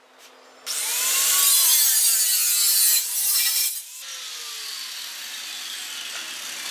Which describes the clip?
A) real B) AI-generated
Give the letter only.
A